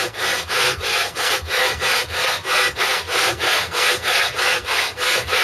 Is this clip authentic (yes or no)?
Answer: no